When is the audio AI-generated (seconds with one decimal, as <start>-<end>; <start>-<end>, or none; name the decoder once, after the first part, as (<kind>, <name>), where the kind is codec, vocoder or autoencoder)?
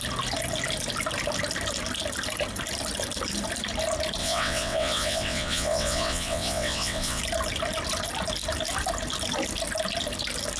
4.2-7.2 (vocoder, WaveNeXt)